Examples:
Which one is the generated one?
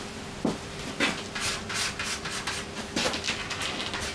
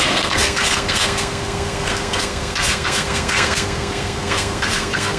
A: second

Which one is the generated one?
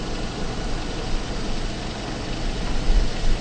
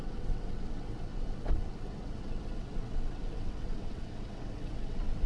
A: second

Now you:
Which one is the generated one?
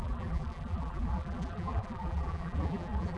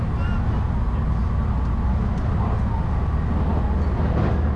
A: first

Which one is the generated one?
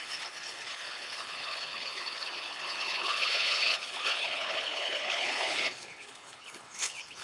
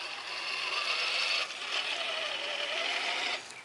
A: first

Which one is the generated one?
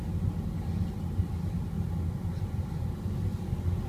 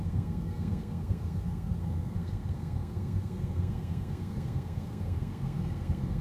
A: second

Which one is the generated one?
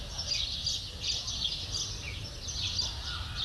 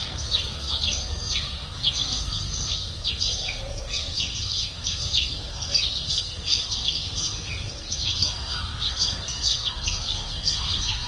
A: second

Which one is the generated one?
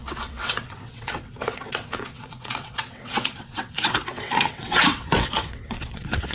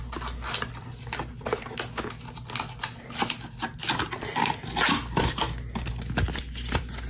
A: first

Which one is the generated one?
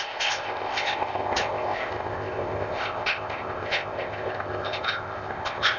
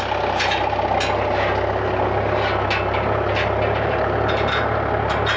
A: first